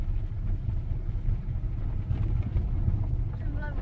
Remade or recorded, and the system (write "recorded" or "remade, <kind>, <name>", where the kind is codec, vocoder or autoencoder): recorded